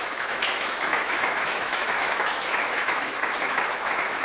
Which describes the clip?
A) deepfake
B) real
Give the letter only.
A